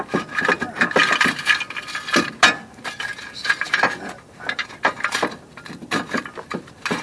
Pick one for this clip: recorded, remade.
recorded